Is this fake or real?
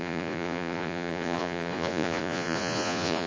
fake